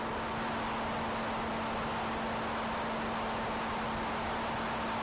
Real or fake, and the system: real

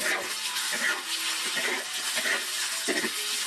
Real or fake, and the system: real